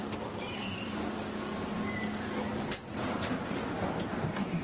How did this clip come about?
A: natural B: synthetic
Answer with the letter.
A